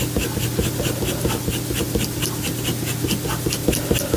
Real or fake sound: real